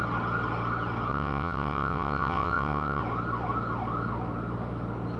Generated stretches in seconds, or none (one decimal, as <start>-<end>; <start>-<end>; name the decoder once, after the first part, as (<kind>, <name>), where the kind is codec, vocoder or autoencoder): 1.1-3.0 (vocoder, WaveNeXt)